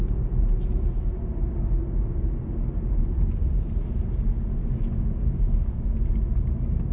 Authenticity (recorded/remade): recorded